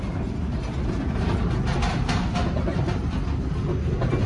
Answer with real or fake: real